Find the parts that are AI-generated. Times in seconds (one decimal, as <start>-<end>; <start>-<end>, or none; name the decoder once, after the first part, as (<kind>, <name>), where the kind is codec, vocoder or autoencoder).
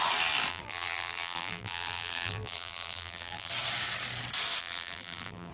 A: 0.5-3.5 (vocoder, BigVGAN v2); 4.6-5.5